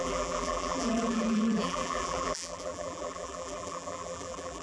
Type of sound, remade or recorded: remade